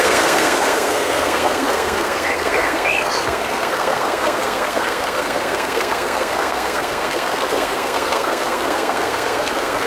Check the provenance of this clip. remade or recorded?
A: remade